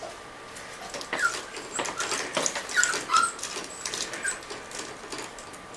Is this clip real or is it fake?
real